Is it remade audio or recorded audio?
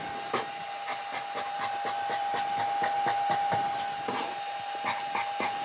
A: recorded